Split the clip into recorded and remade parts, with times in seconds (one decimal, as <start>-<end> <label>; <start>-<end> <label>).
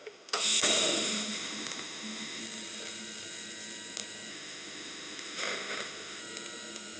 0.0-2.4 remade; 2.4-4.3 recorded; 4.3-6.2 remade; 6.2-7.0 recorded